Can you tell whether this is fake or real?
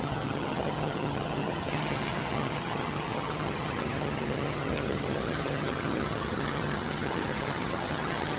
fake